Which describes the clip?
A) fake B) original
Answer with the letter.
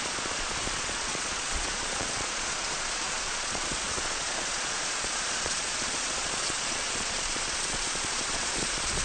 A